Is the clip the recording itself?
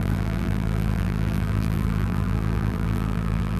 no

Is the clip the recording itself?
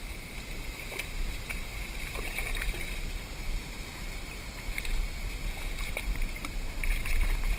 no